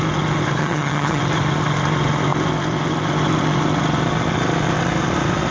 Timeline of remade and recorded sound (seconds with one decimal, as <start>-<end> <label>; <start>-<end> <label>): 0.0-0.6 recorded; 0.6-1.2 remade; 1.2-5.5 recorded